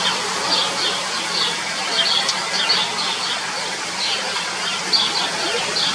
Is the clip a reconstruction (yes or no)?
no